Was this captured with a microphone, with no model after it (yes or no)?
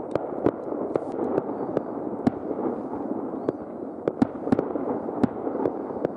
yes